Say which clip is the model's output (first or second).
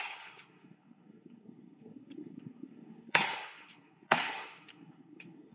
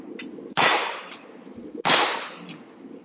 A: first